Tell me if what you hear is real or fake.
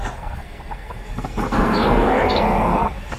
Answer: fake